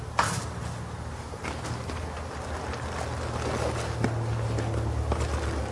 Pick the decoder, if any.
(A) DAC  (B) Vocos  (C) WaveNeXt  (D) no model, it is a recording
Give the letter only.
D